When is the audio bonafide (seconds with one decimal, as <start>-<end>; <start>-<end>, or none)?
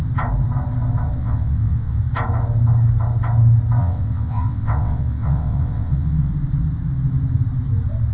0.0-1.2; 2.0-3.8; 6.3-8.1